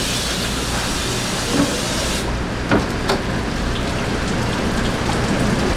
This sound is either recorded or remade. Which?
recorded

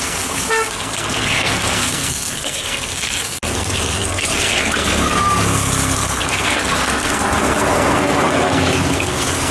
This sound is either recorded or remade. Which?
remade